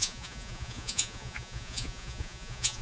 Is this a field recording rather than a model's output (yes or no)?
no